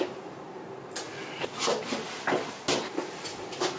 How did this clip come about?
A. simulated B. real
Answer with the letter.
B